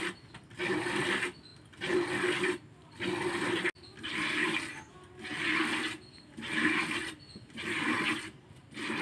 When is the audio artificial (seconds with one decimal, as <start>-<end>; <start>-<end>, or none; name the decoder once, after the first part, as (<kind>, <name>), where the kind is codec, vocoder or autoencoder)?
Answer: none

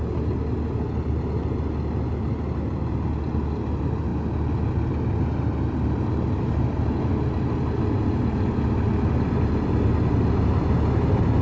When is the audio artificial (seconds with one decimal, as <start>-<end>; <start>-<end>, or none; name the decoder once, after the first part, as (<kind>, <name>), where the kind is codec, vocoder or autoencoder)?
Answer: none

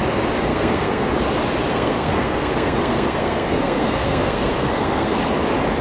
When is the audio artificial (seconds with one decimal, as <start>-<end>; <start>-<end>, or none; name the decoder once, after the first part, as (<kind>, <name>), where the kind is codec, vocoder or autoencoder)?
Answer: 0.5-1.1 (codec, SNAC); 1.7-5.2

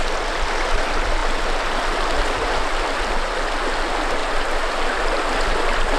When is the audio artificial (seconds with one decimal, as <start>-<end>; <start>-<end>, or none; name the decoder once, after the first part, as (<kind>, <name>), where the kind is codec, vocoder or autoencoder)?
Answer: 4.2-4.8 (vocoder, BigVGAN v2)

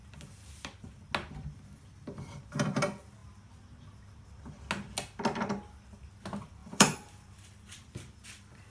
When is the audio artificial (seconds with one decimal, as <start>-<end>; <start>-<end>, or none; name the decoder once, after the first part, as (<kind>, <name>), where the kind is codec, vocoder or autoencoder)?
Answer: 6.6-7.9 (vocoder, BigVGAN v2)

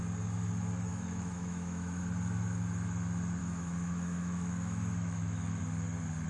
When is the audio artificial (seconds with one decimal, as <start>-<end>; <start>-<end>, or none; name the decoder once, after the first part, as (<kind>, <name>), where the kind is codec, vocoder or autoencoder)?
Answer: 0.9-2.0 (autoencoder, DAC-VAE); 3.4-5.6

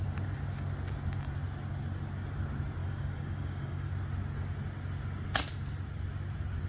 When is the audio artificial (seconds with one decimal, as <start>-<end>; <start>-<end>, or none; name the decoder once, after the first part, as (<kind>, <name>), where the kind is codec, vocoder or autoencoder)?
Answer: 2.8-3.9 (codec, DAC)

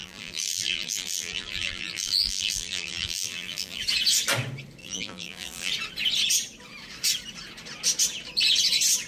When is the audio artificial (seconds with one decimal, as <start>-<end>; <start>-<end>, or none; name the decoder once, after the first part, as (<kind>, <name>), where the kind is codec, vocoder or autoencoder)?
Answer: 0.0-3.8 (vocoder, BigVGAN v2); 4.8-5.7